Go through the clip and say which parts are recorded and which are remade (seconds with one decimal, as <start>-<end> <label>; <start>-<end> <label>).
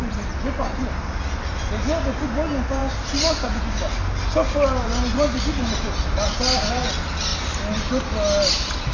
0.0-8.9 recorded